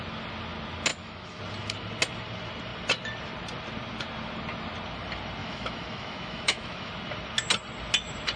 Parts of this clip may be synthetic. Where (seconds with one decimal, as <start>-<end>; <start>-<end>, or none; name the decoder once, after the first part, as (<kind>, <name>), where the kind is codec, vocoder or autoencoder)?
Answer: 0.9-1.4 (autoencoder, DAC-VAE); 5.4-6.9